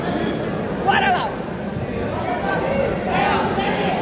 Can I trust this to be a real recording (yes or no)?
yes